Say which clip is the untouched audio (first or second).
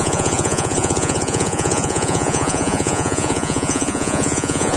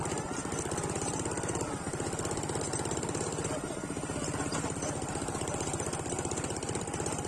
second